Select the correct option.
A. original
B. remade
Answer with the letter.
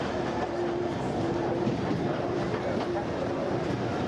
B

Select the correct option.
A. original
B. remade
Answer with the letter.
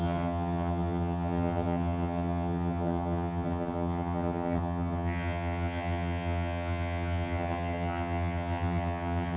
B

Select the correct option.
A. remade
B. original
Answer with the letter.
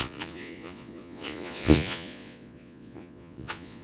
A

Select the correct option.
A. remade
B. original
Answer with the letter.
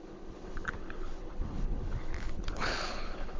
A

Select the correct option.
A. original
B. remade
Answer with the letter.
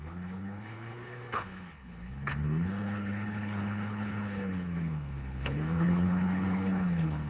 B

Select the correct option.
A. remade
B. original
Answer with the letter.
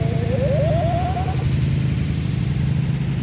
B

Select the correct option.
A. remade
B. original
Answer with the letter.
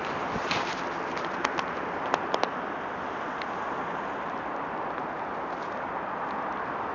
B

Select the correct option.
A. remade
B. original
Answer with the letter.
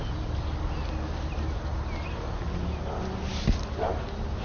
B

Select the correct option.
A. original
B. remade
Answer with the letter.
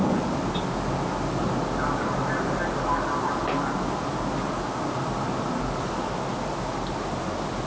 A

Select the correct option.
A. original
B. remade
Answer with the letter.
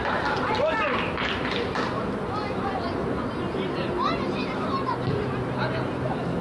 A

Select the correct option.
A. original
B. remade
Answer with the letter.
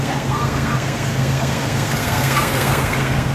B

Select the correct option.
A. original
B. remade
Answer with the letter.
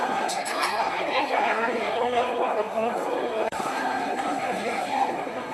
B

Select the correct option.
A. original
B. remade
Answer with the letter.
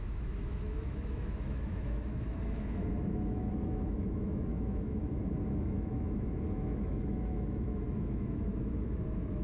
B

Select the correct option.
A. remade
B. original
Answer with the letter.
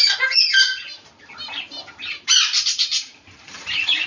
A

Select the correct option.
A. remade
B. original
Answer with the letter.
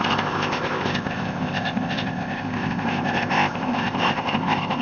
A